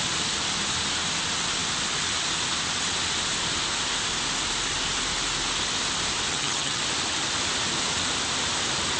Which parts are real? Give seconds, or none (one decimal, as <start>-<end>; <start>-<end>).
0.0-6.3; 6.8-9.0